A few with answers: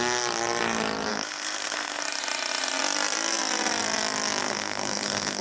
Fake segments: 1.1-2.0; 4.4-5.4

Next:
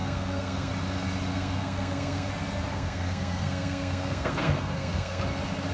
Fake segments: 0.0-0.7; 1.3-2.3; 2.7-5.2

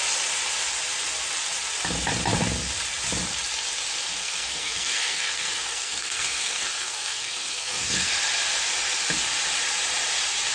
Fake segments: 4.2-8.1

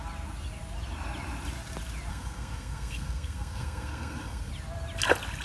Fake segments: 2.1-4.5